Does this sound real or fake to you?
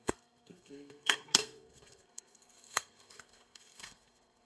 fake